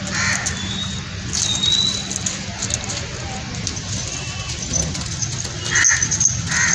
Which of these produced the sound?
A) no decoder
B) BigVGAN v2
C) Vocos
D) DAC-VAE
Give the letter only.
A